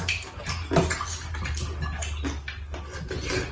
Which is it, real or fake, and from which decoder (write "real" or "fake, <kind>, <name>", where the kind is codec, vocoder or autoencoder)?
real